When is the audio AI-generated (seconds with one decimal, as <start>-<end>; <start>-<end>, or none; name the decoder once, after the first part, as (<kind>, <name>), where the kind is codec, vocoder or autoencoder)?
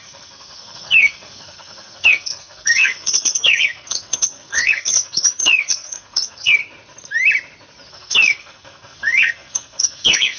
0.0-6.6 (codec, SNAC); 7.9-10.4